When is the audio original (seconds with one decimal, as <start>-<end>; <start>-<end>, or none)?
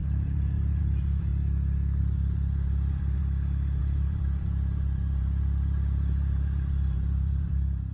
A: 1.3-2.0; 3.2-3.8